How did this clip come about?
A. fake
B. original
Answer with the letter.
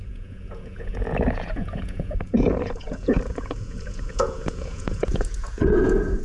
A